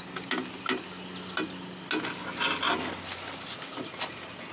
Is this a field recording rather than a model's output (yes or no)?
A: yes